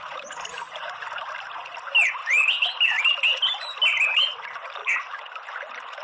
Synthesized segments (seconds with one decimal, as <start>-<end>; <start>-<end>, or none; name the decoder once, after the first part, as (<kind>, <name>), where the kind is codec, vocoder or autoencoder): 2.2-3.0 (vocoder, BigVGAN v2)